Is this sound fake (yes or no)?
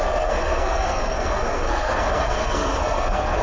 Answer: yes